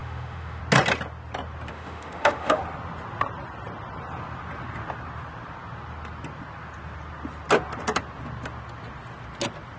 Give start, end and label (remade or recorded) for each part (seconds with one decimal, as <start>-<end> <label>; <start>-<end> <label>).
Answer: 0.0-0.6 remade; 0.6-1.7 recorded; 1.7-2.6 remade; 2.6-9.8 recorded